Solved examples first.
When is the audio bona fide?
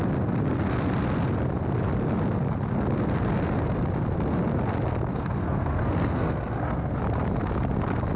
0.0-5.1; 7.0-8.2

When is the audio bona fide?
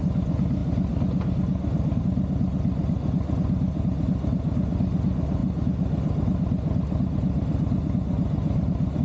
0.0-9.0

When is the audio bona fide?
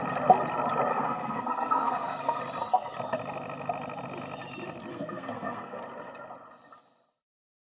0.0-0.9; 2.4-4.9; 5.8-7.7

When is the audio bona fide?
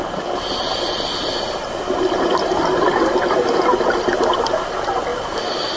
0.0-5.8